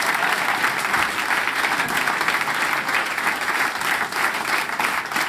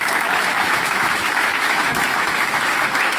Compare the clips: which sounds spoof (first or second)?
second